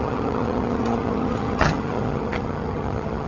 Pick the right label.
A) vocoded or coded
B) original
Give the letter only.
A